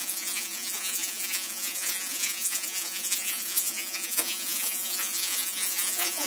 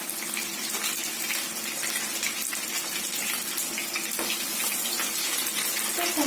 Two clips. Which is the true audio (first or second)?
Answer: second